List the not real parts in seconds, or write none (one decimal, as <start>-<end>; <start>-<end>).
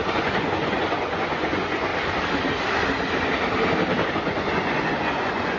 0.0-1.9; 4.1-5.6